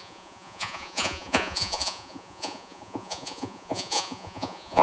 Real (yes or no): no